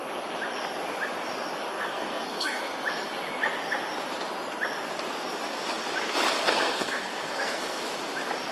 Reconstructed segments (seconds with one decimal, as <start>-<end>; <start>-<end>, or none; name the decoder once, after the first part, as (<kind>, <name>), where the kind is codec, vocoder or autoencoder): 1.7-2.6 (codec, SNAC); 6.4-7.8